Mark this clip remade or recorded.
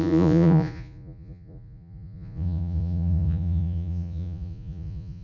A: remade